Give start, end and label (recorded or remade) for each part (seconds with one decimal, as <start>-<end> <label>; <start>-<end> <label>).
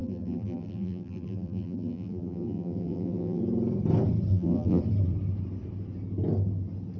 0.0-3.4 remade; 3.4-4.3 recorded; 4.3-4.8 remade; 4.8-7.0 recorded